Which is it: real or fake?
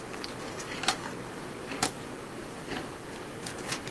fake